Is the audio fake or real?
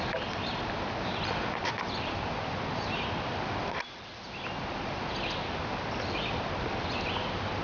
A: real